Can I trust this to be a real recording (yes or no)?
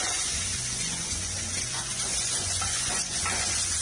no